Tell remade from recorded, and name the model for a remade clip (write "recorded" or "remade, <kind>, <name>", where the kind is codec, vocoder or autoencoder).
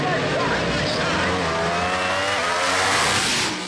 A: recorded